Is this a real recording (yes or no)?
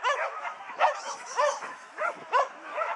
no